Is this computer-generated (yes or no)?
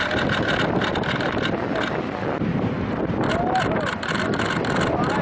no